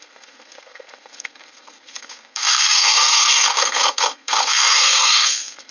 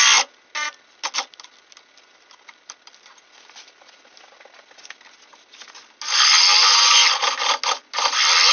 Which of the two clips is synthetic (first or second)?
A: first